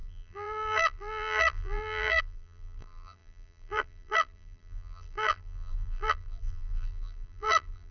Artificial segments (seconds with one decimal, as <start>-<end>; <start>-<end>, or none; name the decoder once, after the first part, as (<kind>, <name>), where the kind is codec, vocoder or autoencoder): 0.0-7.9 (vocoder, BigVGAN v2)